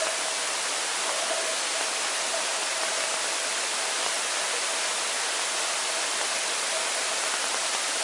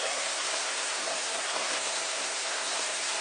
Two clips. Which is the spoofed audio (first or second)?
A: second